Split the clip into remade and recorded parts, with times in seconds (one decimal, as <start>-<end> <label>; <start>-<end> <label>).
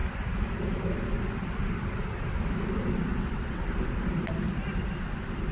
0.0-3.1 recorded; 3.1-3.6 remade; 3.6-5.5 recorded